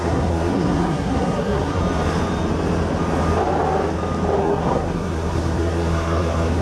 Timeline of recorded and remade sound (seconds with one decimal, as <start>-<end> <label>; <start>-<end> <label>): 0.0-1.8 remade; 1.8-4.4 recorded; 4.4-6.6 remade